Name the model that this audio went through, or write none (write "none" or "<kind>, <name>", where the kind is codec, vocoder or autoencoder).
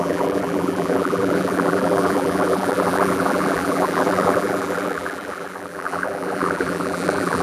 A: vocoder, BigVGAN v2